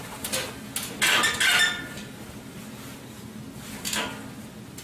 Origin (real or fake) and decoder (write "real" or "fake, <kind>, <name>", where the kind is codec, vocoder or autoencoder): real